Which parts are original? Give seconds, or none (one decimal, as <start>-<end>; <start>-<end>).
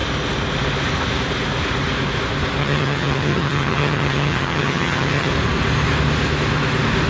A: 0.0-2.6; 5.3-7.1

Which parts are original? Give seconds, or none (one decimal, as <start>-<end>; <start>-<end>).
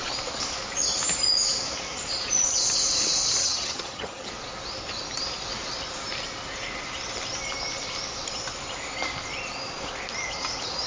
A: 0.0-3.4; 4.3-10.9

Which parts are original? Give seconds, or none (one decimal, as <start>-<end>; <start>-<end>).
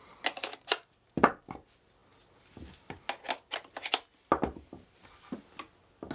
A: 0.0-6.1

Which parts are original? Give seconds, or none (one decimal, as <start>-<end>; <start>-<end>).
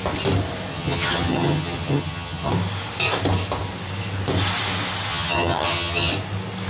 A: 0.0-0.7; 2.5-5.1; 6.1-6.7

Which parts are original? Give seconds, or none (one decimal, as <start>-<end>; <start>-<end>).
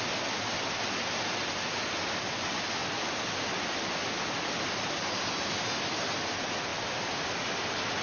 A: 0.0-8.0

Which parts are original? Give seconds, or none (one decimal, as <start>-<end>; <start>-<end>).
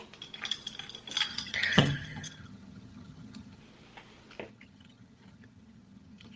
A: 0.0-1.3; 3.6-4.5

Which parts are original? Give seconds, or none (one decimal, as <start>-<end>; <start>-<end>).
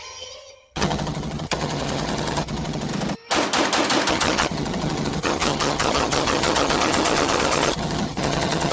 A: 2.9-4.1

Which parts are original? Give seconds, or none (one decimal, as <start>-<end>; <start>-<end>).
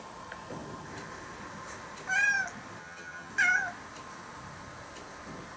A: 0.0-2.8; 3.3-5.6